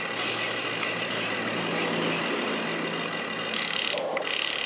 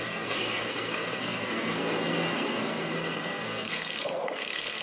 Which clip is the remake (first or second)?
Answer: second